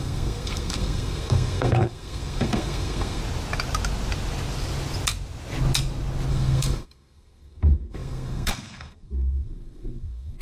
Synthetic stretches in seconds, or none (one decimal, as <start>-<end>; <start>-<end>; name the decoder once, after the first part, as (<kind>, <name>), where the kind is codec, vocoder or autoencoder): 0.0-3.2 (codec, SNAC); 6.3-10.4